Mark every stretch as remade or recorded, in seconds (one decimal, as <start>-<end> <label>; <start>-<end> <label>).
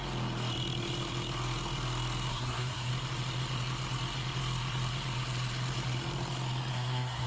0.0-2.3 recorded; 2.3-2.9 remade; 2.9-6.7 recorded; 6.7-7.3 remade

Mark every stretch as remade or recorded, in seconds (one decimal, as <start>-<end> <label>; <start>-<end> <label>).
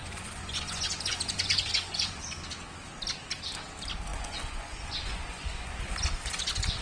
0.0-2.2 remade; 2.2-4.1 recorded; 4.1-5.9 remade; 5.9-6.8 recorded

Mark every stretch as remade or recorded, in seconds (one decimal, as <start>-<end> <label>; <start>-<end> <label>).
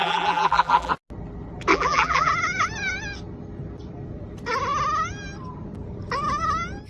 0.0-0.9 remade; 0.9-1.7 recorded; 1.7-2.3 remade; 2.3-6.9 recorded